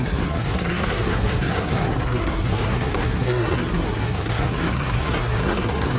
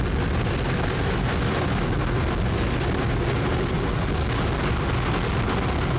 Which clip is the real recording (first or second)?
second